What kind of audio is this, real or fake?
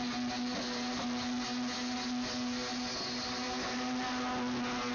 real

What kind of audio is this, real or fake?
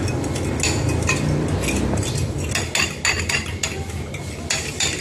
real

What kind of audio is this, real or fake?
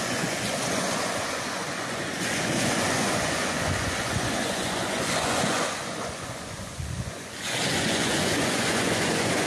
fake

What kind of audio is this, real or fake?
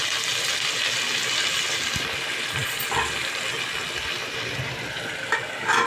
real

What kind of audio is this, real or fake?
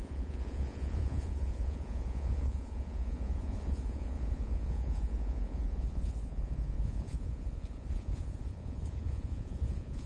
fake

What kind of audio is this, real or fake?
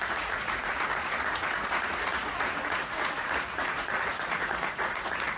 fake